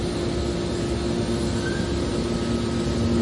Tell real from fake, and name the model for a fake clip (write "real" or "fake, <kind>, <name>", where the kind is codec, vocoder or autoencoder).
real